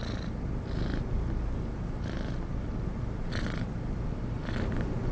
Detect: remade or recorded recorded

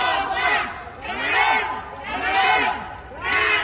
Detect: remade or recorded recorded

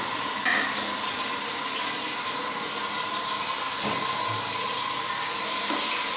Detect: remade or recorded recorded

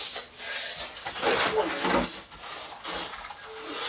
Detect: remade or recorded recorded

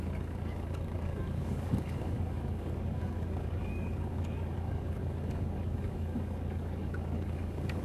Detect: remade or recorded remade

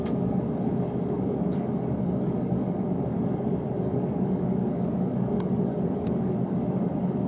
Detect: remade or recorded remade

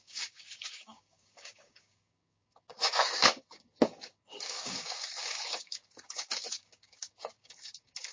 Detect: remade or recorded remade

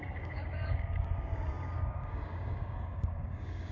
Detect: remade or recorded remade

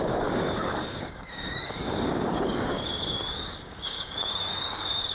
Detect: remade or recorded remade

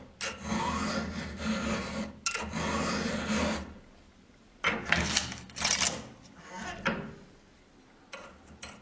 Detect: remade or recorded recorded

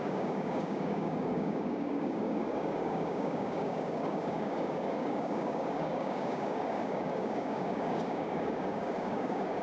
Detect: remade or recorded remade